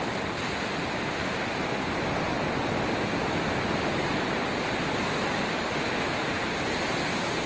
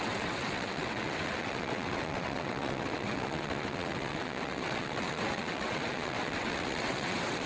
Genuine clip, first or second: first